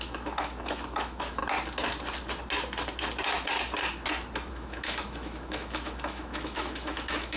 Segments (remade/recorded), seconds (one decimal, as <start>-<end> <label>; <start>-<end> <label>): 0.0-1.4 remade; 1.4-4.5 recorded; 4.5-7.4 remade